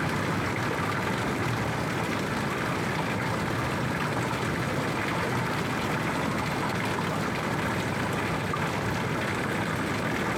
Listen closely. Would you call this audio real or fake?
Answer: real